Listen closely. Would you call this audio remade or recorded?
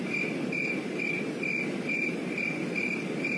recorded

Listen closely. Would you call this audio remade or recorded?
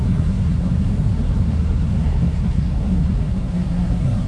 remade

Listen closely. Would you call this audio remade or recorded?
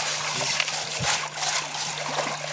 recorded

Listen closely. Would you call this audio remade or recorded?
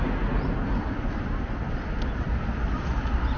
recorded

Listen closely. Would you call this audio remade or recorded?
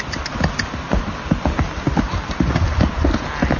recorded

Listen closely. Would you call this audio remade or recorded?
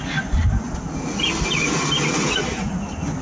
recorded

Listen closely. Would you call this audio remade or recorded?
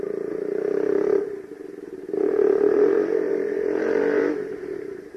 remade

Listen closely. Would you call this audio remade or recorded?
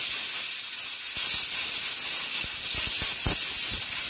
recorded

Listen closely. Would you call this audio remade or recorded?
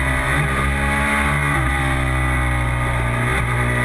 recorded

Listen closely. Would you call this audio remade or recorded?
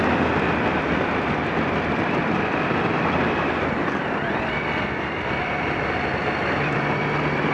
remade